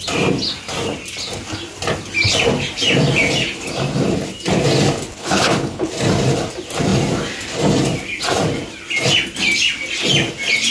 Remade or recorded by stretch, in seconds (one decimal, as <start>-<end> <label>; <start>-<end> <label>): 0.0-5.1 recorded; 5.1-5.9 remade; 5.9-10.7 recorded